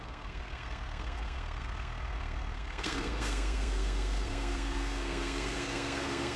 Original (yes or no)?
no